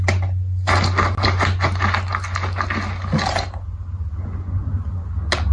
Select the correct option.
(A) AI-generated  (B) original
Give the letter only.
B